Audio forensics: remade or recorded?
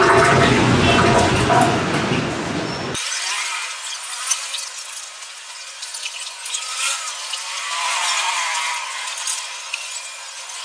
remade